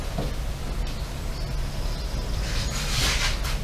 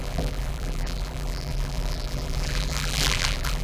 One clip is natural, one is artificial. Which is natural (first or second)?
first